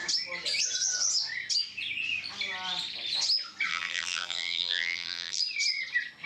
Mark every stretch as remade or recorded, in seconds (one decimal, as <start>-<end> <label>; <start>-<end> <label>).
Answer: 0.0-3.7 recorded; 3.7-5.4 remade; 5.4-6.3 recorded